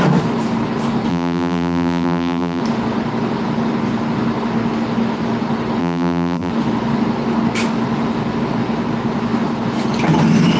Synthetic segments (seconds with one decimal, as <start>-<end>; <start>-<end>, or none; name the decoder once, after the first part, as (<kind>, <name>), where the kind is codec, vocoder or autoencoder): 1.1-2.6 (vocoder, BigVGAN v2); 5.8-6.5

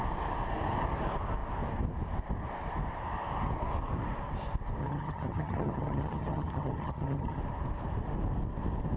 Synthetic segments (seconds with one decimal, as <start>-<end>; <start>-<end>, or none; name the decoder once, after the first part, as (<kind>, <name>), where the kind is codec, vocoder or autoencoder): 4.8-7.4 (vocoder, HiFi-GAN)